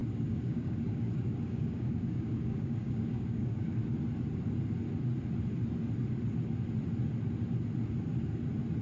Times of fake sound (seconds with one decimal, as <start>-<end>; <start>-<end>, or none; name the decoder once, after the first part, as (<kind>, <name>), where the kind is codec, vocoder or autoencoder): 0.0-3.8 (codec, DAC)